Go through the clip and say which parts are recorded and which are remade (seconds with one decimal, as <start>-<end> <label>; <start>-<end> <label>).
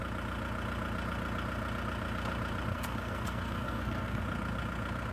0.0-2.7 recorded; 2.7-4.2 remade; 4.2-5.1 recorded